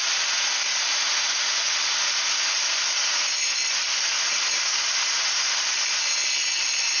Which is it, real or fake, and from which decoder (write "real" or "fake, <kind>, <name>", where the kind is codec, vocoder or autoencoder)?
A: real